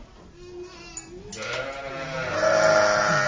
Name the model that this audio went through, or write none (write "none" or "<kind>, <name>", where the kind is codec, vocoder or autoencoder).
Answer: none